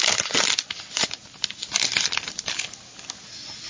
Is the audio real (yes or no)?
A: yes